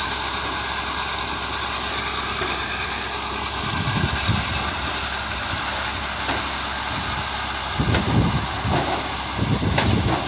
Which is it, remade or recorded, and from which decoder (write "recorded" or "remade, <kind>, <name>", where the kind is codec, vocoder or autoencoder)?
recorded